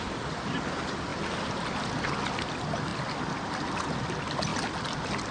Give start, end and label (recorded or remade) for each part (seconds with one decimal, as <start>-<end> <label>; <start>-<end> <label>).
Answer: 0.0-1.1 recorded; 1.1-2.0 remade; 2.0-5.3 recorded

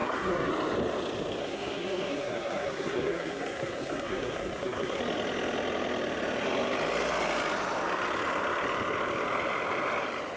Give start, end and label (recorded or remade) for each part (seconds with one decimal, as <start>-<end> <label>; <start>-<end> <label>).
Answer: 0.0-0.5 remade; 0.5-1.4 recorded; 1.4-5.0 remade; 5.0-10.4 recorded

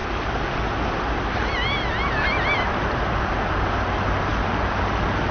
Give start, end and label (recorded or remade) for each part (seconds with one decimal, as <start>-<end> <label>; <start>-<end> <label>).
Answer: 0.0-5.3 recorded

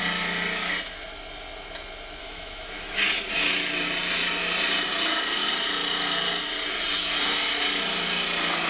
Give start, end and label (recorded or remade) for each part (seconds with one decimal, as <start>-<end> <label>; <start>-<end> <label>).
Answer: 0.0-2.2 recorded; 2.2-3.0 remade; 3.0-8.7 recorded

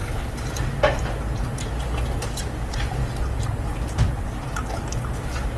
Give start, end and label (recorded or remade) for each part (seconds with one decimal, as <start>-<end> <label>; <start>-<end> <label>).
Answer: 0.0-5.6 recorded